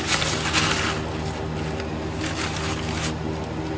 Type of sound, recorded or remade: recorded